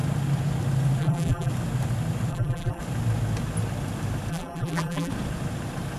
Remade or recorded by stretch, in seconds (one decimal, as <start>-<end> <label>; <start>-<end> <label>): 0.0-1.0 recorded; 1.0-1.5 remade; 1.5-2.3 recorded; 2.3-2.8 remade; 2.8-4.3 recorded; 4.3-5.1 remade; 5.1-6.0 recorded